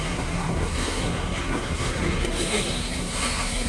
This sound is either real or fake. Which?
fake